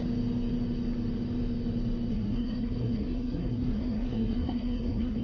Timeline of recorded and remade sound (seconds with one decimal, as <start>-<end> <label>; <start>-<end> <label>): 0.0-2.1 recorded; 2.1-5.2 remade